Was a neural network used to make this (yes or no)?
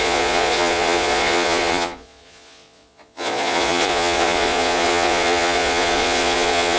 yes